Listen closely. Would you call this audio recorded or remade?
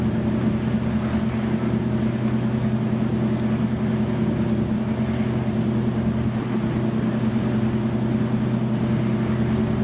recorded